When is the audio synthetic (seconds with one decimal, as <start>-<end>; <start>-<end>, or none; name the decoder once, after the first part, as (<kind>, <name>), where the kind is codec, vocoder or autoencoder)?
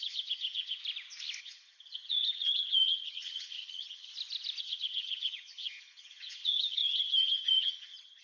0.0-0.8 (vocoder, HiFi-GAN); 1.4-4.1; 4.6-8.2